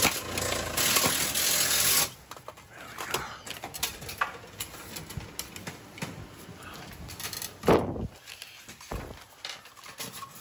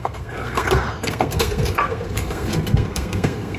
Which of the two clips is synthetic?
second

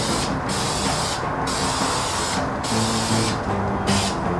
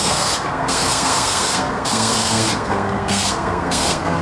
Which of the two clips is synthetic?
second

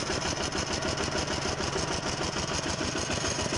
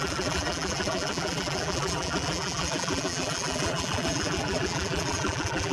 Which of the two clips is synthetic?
second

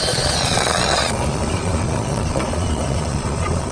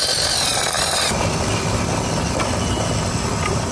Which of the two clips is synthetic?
first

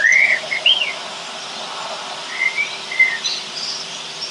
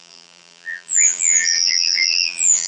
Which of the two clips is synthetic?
second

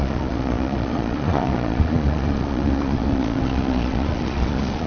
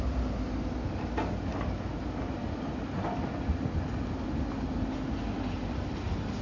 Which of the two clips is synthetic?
first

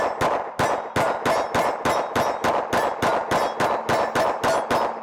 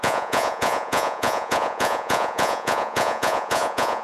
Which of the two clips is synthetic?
second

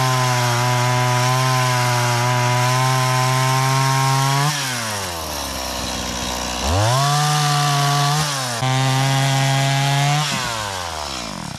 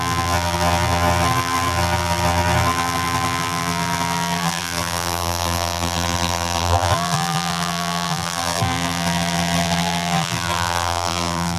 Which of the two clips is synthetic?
second